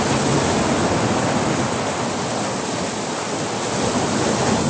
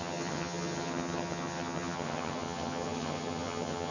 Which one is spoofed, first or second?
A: second